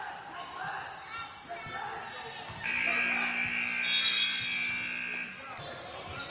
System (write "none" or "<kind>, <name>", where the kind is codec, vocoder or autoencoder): none